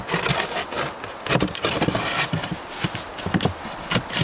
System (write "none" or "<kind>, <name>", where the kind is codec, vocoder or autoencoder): none